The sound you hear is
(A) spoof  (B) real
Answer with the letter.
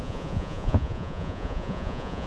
A